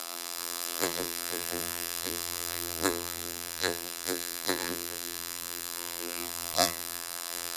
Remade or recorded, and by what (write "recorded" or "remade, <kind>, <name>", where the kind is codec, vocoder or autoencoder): remade, vocoder, BigVGAN v2